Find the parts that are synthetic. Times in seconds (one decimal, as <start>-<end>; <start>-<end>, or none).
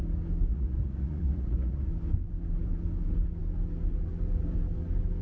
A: 0.5-1.9